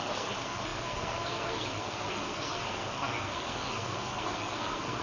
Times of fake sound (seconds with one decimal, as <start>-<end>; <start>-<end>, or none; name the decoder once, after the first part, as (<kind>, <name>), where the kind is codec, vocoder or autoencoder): 0.0-5.0 (codec, SNAC)